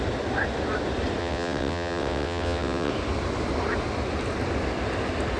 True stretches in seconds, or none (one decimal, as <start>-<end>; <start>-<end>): 0.0-1.2; 2.9-5.4